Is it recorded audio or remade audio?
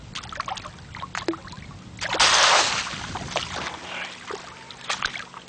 recorded